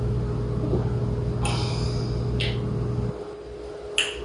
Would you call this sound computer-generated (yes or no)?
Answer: no